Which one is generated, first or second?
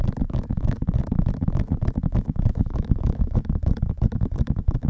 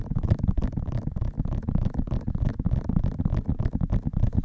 first